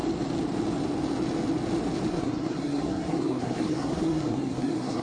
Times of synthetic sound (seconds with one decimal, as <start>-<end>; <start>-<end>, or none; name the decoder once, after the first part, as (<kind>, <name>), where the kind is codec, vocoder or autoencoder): 2.1-5.0 (codec, SNAC)